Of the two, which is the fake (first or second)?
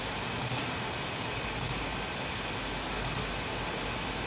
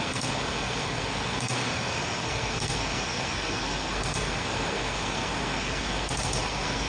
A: second